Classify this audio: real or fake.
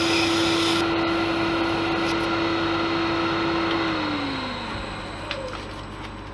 real